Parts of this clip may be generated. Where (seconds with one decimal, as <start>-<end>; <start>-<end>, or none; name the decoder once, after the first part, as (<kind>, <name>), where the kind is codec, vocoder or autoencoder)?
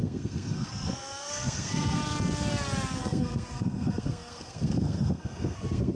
0.0-2.0 (codec, SNAC); 3.0-5.9